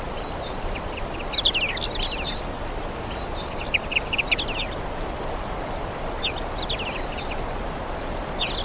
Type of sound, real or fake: real